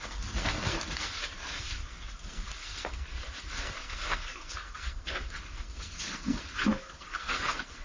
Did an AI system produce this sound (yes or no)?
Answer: yes